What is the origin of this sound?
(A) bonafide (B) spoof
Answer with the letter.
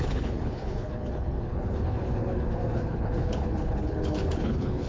B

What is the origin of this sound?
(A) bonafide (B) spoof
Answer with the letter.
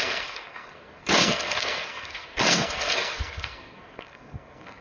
B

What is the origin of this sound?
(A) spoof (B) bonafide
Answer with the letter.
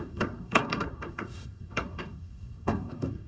A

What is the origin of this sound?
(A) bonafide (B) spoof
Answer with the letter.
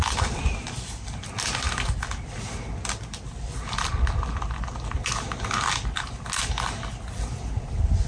A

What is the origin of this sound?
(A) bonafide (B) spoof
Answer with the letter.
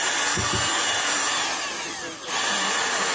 A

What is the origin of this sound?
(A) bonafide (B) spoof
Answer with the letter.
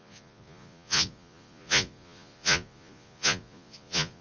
B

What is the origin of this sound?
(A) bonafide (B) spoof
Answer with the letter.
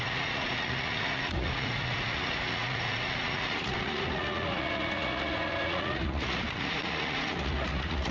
B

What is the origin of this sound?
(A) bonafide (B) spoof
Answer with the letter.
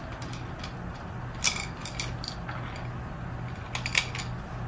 A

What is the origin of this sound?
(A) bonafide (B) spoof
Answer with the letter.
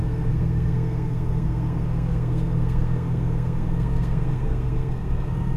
B